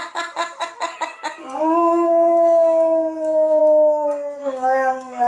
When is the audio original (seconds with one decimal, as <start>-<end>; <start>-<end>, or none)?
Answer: 0.0-0.4; 3.6-4.4